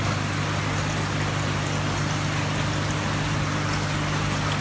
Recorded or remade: recorded